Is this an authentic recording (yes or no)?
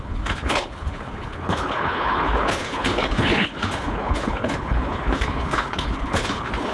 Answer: no